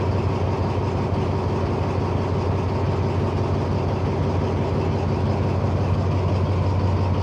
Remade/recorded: recorded